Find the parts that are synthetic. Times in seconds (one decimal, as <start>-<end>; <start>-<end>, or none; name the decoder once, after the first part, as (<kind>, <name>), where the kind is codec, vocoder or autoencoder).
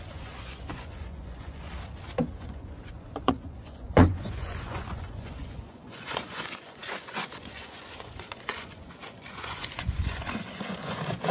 0.0-1.7 (vocoder, Vocos); 2.3-11.3